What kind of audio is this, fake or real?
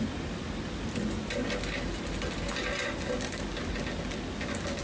real